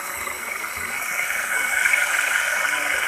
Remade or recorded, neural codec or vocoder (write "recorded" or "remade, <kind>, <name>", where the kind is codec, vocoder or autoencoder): remade, codec, SNAC